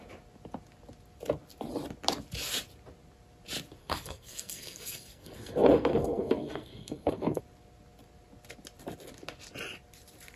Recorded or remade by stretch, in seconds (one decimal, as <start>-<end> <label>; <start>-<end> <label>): 0.0-3.8 recorded; 3.8-7.4 remade; 7.4-10.4 recorded